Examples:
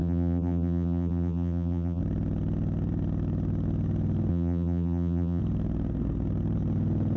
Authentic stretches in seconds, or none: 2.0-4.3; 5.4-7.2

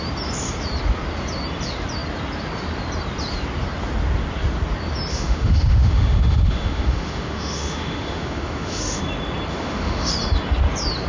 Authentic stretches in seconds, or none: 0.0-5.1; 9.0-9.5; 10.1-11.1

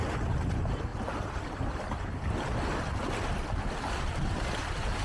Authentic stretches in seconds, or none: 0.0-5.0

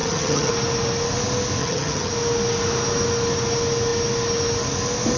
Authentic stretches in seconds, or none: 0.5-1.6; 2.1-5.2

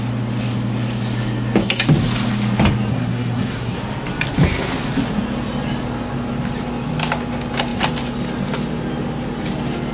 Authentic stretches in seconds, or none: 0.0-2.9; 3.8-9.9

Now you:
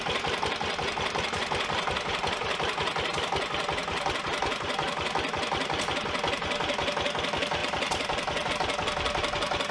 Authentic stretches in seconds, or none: 0.0-3.8; 5.9-7.6; 8.5-9.7